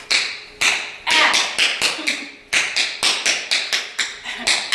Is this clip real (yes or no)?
yes